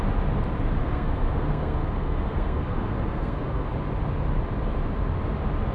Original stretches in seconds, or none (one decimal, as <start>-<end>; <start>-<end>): 0.0-0.8; 3.7-5.7